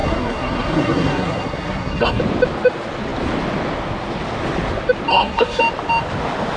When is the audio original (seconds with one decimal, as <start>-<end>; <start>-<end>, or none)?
2.2-5.1; 5.6-6.6